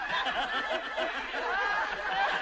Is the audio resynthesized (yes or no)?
no